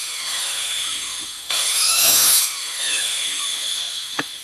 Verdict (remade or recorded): remade